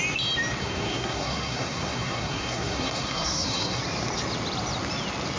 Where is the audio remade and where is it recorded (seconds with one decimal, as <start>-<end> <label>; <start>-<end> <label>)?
0.0-0.6 recorded; 0.6-3.8 remade; 3.8-5.4 recorded